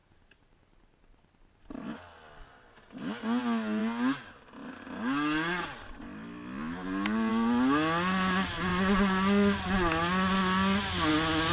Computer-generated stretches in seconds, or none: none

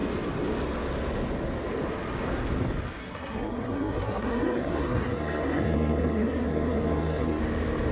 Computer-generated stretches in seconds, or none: 3.0-7.4 (codec, SNAC)

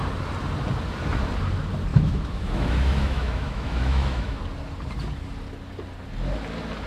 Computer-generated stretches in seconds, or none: 1.9-4.4 (autoencoder, DAC-VAE)

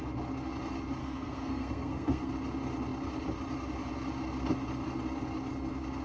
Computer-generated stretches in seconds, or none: 1.0-2.3 (codec, SNAC)

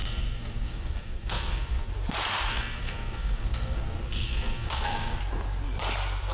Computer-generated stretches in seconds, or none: 0.0-1.9 (codec, SNAC); 2.5-5.2